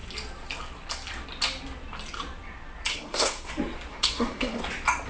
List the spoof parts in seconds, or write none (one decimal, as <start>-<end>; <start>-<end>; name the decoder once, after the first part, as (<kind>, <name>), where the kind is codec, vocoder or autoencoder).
2.9-3.5 (codec, SNAC); 3.9-4.6